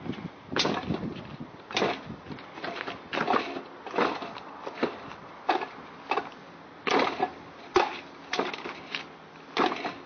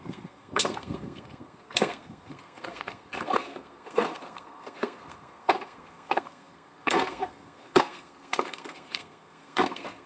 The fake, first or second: second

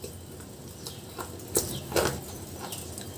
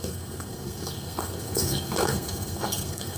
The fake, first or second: second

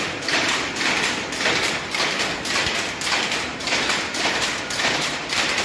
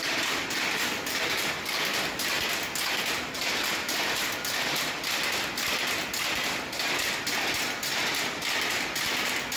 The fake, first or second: first